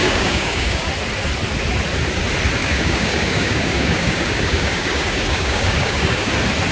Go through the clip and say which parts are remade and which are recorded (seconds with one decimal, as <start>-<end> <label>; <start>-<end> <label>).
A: 0.0-0.9 remade; 0.9-2.6 recorded; 2.6-6.3 remade; 6.3-6.7 recorded